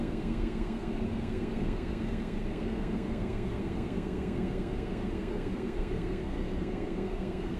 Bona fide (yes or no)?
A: no